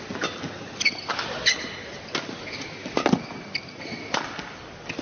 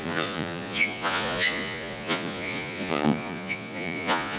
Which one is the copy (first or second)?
second